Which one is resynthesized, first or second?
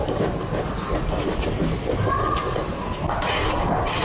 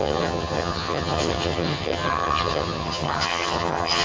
second